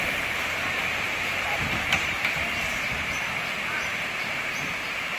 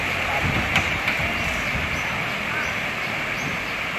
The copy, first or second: first